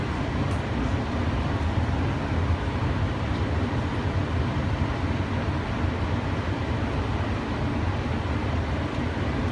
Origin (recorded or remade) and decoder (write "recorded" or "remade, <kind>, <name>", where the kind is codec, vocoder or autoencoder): remade, vocoder, BigVGAN v2